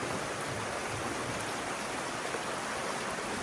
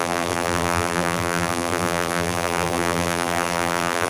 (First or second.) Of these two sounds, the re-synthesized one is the second